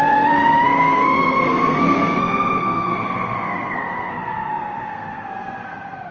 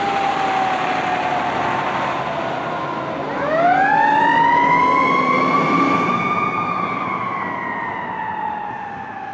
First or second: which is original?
second